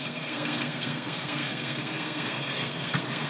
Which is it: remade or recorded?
remade